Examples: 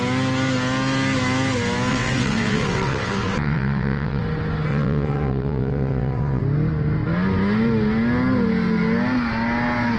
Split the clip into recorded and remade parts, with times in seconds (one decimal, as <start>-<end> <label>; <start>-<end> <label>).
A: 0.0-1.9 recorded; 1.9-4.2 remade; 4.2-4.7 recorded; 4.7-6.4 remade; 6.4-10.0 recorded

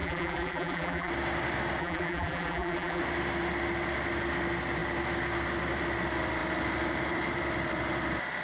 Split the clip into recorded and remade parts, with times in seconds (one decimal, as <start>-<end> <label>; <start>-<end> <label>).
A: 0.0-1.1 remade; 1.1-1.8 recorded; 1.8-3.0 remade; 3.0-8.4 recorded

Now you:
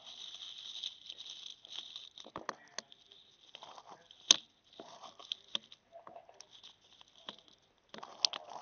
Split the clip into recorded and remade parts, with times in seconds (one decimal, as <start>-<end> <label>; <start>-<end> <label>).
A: 0.0-8.6 recorded